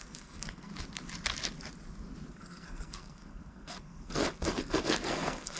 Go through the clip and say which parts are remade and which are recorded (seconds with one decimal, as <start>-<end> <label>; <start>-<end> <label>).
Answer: 0.0-0.7 remade; 0.7-2.3 recorded; 2.3-5.6 remade